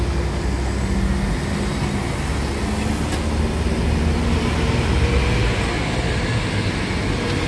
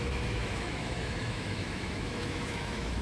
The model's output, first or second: second